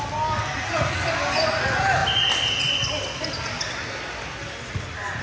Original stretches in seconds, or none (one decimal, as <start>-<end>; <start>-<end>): 0.0-5.2